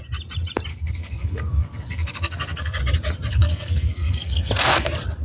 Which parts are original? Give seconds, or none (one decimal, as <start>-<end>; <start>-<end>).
0.0-0.7; 2.8-3.3; 4.5-5.2